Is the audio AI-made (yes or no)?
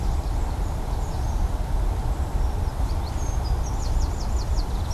yes